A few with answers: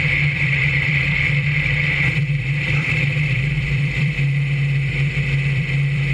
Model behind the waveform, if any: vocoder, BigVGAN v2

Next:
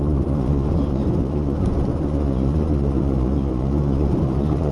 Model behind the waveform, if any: vocoder, Vocos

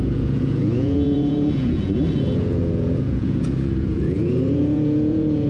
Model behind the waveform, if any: vocoder, Vocos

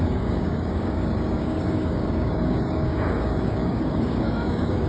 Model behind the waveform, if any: codec, DAC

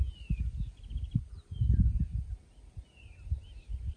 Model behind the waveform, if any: none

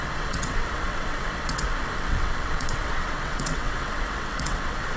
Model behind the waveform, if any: vocoder, WaveNeXt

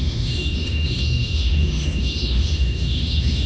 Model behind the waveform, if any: autoencoder, DAC-VAE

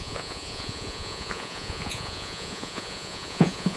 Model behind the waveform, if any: vocoder, Vocos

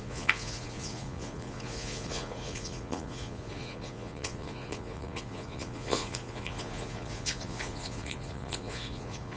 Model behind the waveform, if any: vocoder, Vocos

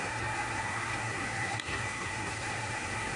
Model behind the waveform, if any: codec, SNAC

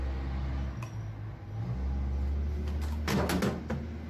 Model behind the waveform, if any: none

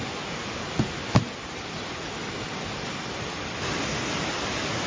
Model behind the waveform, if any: none